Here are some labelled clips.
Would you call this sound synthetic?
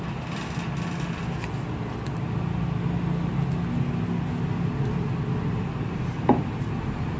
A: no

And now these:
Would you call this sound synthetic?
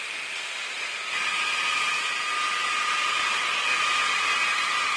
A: no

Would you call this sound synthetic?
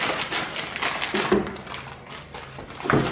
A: no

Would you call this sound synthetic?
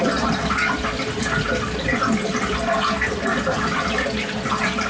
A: no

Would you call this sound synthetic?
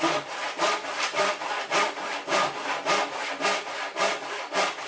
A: no